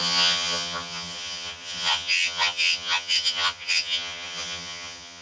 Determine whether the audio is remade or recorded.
remade